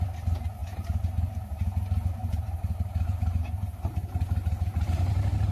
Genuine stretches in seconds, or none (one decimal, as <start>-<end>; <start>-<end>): 0.0-0.6; 1.6-2.2